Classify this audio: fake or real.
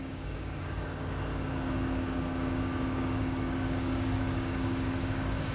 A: fake